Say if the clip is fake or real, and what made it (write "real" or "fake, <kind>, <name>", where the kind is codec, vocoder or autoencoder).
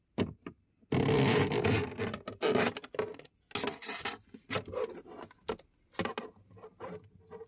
real